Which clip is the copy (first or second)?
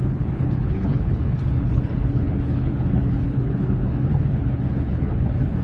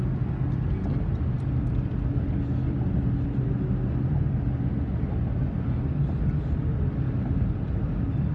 first